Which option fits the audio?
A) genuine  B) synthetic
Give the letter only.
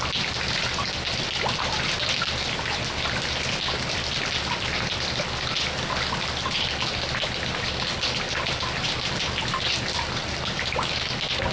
A